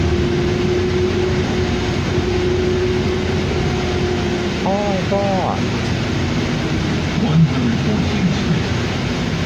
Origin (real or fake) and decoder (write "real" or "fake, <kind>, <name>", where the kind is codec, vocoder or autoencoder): real